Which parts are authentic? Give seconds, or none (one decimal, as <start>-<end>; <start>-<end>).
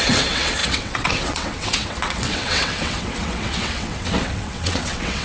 none